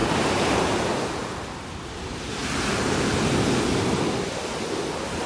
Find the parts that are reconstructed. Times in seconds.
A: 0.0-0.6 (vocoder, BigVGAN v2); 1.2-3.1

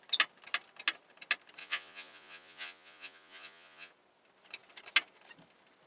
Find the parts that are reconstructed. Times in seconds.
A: 1.6-3.9 (vocoder, Vocos)

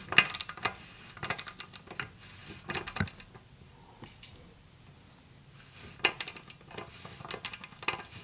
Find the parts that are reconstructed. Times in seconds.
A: none

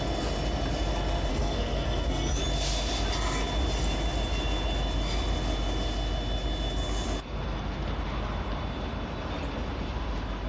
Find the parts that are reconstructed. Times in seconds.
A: 1.3-2.4 (codec, SNAC)

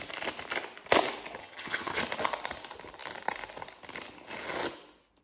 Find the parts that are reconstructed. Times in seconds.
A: 1.4-2.0 (vocoder, HiFi-GAN)

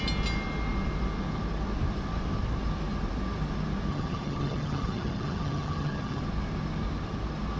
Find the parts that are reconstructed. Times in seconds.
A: 3.9-6.2 (vocoder, HiFi-GAN)